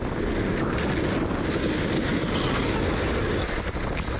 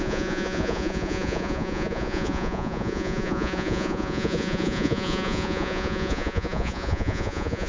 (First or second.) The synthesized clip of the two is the second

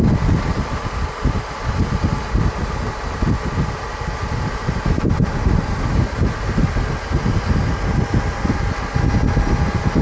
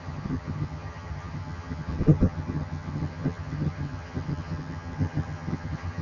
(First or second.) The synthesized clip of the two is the second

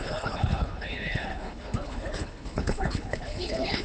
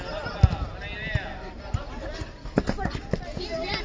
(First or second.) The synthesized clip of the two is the first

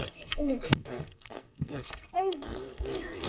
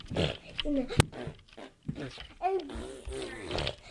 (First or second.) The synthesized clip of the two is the first